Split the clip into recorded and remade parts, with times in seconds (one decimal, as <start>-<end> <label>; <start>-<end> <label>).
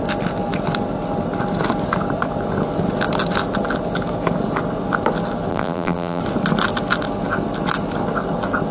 0.0-5.5 recorded; 5.5-6.2 remade; 6.2-8.7 recorded